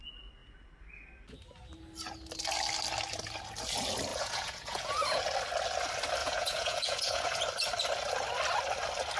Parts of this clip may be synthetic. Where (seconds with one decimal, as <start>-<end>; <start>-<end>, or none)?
4.1-5.2; 6.2-7.4